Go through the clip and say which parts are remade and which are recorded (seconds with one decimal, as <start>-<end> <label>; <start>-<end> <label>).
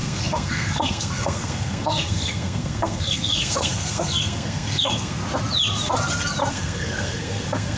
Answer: 0.0-5.2 remade; 5.2-6.5 recorded; 6.5-7.8 remade